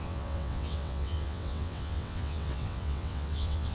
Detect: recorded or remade remade